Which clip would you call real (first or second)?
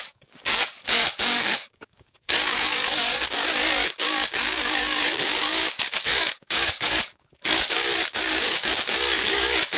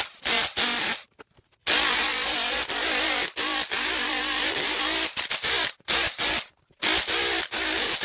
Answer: second